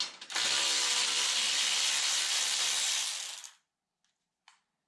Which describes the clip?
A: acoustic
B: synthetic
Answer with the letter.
A